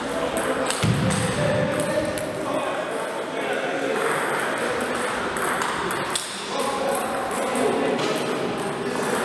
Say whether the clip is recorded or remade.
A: recorded